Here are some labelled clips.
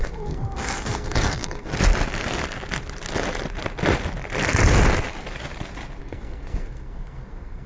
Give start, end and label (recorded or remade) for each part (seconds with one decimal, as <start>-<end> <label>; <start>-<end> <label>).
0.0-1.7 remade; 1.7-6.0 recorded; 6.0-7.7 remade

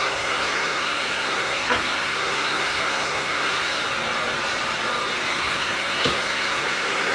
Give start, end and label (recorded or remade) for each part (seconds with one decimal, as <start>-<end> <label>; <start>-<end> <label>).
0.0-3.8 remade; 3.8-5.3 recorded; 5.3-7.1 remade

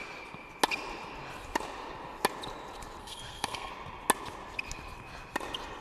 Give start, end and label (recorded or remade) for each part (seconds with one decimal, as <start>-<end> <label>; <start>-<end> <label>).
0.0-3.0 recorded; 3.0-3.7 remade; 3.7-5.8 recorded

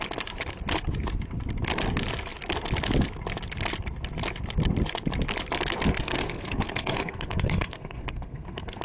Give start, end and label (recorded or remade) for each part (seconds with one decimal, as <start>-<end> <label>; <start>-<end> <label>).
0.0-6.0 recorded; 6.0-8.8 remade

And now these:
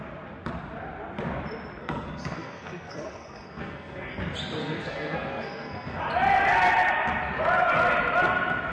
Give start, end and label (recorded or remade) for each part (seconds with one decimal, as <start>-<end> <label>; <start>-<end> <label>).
0.0-1.8 recorded; 1.8-4.1 remade; 4.1-4.6 recorded; 4.6-6.0 remade; 6.0-8.7 recorded